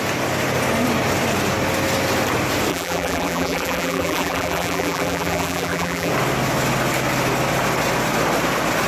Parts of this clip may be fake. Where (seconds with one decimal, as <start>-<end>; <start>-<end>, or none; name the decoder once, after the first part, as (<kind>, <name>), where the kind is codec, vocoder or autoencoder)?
2.7-6.1 (vocoder, BigVGAN v2)